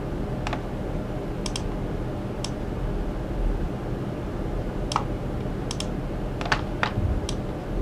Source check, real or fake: real